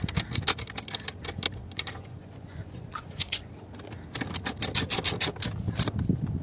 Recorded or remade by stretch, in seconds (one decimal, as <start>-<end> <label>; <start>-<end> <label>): 0.0-1.6 recorded; 1.6-3.5 remade; 3.5-6.4 recorded